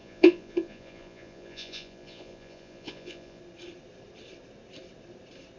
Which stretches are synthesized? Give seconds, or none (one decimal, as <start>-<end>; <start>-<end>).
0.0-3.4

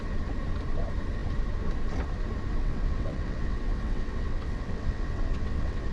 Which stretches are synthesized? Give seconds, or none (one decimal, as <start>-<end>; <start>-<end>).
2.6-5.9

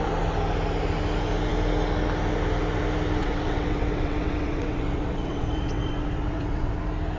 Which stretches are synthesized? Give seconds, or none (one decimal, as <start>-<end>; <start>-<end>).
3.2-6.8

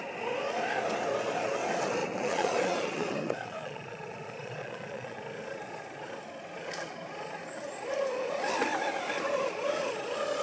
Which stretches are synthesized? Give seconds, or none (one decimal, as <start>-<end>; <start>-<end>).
2.0-5.2

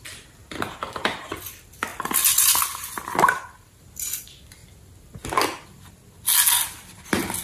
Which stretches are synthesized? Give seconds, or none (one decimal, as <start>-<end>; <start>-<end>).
none

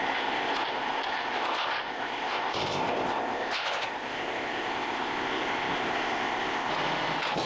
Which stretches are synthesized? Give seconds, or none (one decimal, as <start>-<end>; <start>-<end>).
0.0-6.7